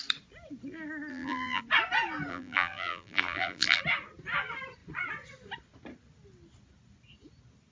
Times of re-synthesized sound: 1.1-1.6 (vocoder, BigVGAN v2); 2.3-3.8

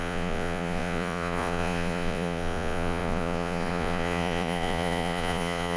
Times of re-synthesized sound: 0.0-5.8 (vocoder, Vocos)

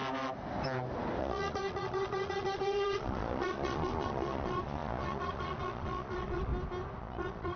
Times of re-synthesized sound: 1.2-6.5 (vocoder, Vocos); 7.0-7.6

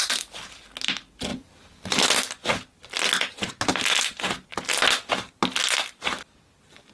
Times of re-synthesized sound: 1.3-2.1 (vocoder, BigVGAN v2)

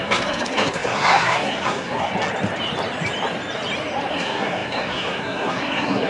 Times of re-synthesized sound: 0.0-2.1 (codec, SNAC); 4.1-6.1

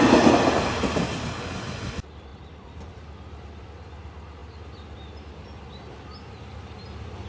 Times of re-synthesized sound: 2.3-2.9 (vocoder, BigVGAN v2)

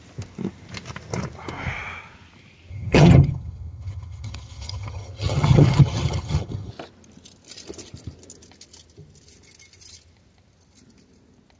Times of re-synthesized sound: 2.7-6.7 (vocoder, HiFi-GAN)

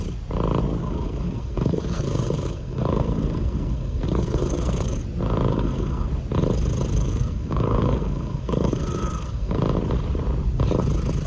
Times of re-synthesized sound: 0.8-5.0 (codec, SNAC); 5.5-6.1; 7.0-9.6